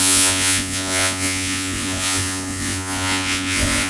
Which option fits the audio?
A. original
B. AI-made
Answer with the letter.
B